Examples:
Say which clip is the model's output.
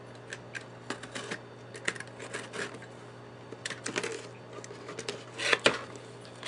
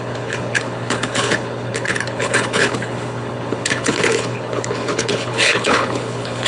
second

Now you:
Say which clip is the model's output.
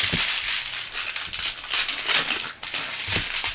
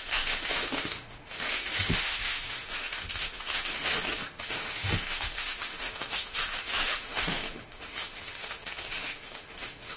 second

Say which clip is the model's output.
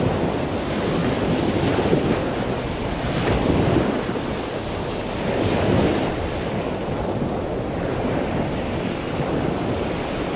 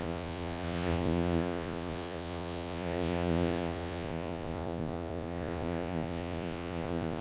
second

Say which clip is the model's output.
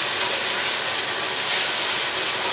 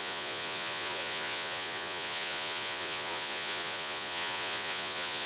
second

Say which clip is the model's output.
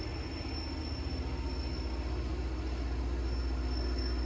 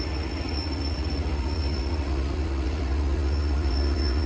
second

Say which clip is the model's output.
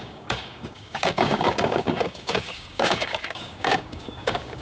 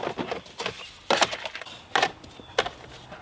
first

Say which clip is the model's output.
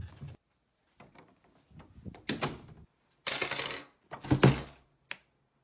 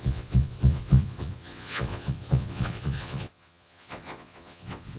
second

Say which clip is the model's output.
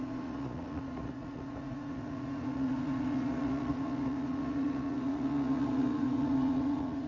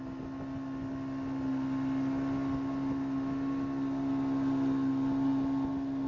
first